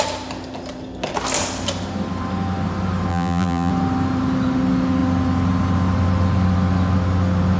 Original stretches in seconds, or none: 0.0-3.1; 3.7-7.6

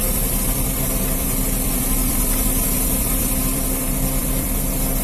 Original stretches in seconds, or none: none